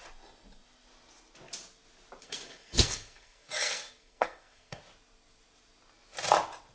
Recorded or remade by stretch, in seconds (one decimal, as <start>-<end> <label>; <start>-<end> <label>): 0.0-2.2 recorded; 2.2-4.8 remade; 4.8-6.7 recorded